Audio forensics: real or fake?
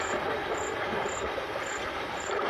real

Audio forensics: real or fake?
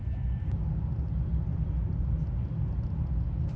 real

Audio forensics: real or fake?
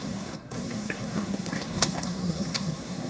fake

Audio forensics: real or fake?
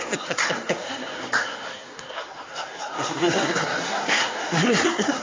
fake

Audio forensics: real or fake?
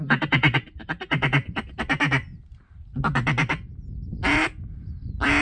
real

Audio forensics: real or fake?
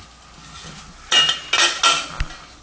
real